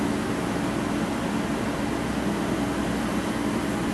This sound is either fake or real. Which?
real